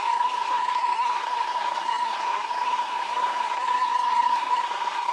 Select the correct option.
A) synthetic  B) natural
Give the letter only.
A